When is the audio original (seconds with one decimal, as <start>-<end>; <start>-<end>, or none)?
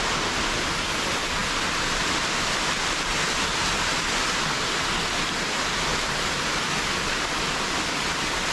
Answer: 0.0-8.5